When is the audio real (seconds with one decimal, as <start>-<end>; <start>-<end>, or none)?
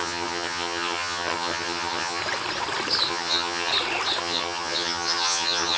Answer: 2.2-3.1; 3.7-4.2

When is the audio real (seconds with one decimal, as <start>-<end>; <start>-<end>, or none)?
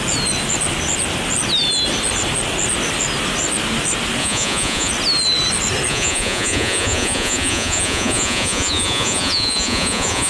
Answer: 0.0-4.2; 4.9-5.9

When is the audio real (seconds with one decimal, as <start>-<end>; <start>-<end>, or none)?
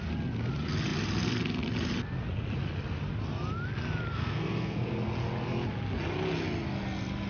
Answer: 0.0-4.1; 4.9-7.3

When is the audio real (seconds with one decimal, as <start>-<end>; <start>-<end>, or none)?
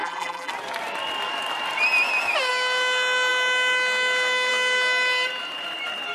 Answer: 0.5-6.1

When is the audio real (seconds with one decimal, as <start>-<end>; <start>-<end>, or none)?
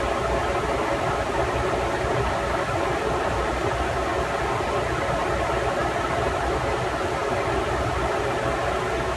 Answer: 0.0-5.8; 6.4-7.2; 7.9-9.2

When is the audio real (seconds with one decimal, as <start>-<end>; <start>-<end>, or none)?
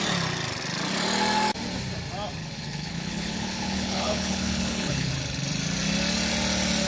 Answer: 0.0-2.4; 5.1-6.9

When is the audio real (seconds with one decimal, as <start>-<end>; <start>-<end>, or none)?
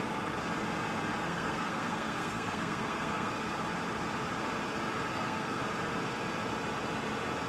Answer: 0.0-1.2; 3.3-5.1; 5.6-7.5